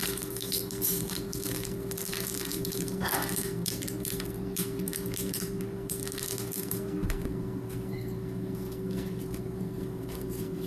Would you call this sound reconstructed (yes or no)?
yes